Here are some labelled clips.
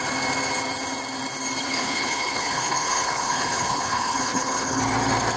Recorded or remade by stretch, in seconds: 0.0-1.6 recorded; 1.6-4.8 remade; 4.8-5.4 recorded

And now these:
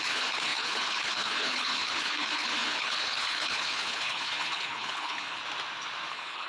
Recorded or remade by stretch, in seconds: 0.0-5.4 remade; 5.4-6.1 recorded; 6.1-6.5 remade

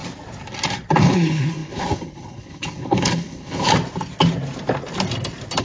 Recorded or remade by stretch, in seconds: 0.0-1.0 recorded; 1.0-3.7 remade; 3.7-5.6 recorded

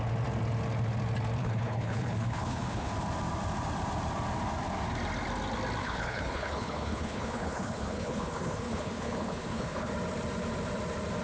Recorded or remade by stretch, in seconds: 0.0-1.4 recorded; 1.4-2.9 remade; 2.9-5.8 recorded; 5.8-9.9 remade; 9.9-11.2 recorded